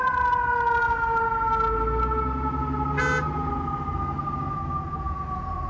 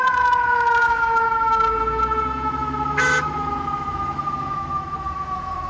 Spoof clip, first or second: second